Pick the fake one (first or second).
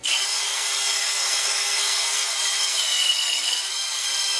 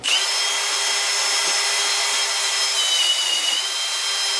first